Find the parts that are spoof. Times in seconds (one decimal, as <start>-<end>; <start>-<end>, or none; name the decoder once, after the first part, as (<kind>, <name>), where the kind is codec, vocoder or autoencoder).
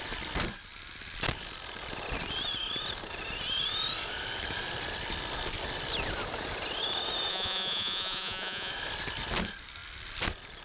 7.3-8.7 (vocoder, Vocos)